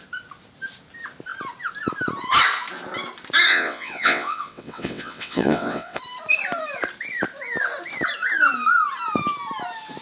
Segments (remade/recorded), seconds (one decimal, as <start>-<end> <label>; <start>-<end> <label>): 0.0-3.5 recorded; 3.5-6.0 remade; 6.0-10.0 recorded